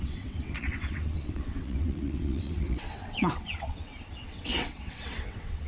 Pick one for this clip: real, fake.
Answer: fake